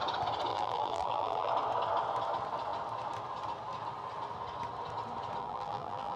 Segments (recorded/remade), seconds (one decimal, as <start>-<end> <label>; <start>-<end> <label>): 0.0-0.5 recorded; 0.5-1.5 remade; 1.5-5.4 recorded; 5.4-6.2 remade